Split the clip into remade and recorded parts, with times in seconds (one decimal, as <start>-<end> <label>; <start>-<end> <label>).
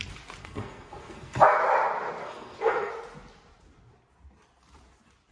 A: 0.0-0.4 recorded; 0.4-1.6 remade; 1.6-2.2 recorded; 2.2-2.9 remade; 2.9-5.3 recorded